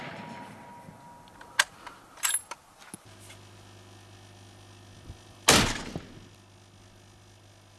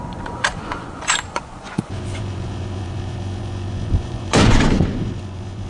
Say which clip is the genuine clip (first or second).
first